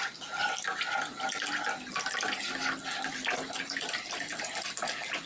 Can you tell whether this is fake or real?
real